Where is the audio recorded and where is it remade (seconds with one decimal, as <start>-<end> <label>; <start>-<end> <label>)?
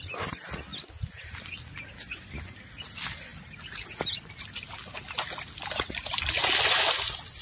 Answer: 0.0-7.4 recorded